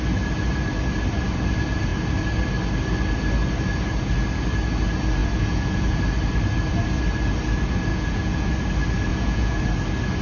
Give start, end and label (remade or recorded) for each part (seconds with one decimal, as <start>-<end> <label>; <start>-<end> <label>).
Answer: 0.0-5.2 recorded; 5.2-6.0 remade; 6.0-7.9 recorded; 7.9-8.5 remade; 8.5-9.1 recorded; 9.1-9.6 remade; 9.6-10.2 recorded